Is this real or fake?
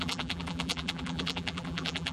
fake